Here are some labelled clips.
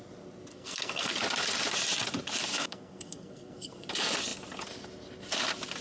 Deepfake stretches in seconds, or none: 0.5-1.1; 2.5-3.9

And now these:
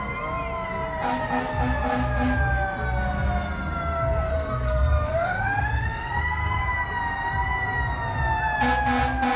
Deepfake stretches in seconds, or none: 4.3-6.6

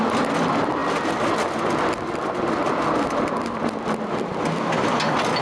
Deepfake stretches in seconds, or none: none

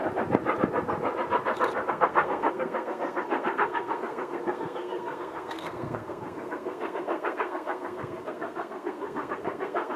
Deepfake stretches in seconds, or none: 1.9-10.0